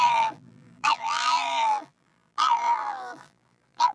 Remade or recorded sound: remade